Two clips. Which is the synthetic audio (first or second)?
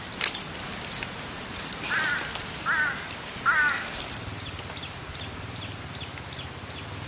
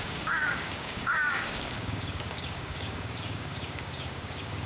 second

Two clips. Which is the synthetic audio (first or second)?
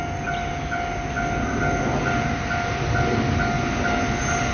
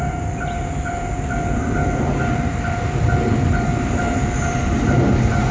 second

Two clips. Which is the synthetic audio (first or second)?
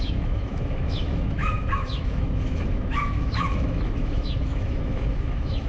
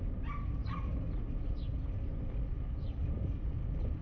first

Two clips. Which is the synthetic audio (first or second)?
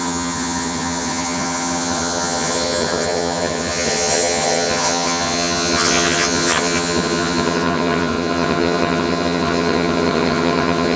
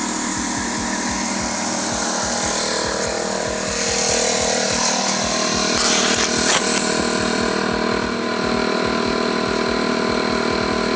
first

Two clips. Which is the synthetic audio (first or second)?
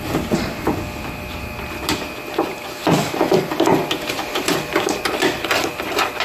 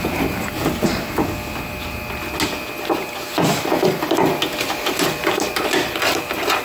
first